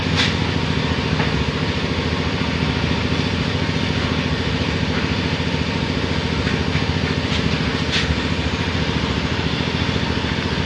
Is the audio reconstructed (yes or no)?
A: no